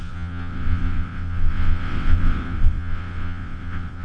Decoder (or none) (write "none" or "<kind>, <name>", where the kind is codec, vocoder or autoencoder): vocoder, WaveNeXt